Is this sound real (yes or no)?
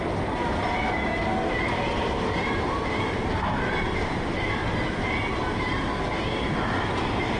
yes